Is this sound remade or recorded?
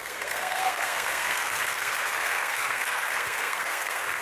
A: remade